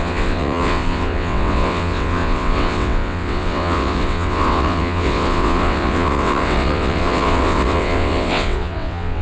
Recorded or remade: remade